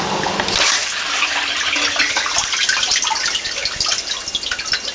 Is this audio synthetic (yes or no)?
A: no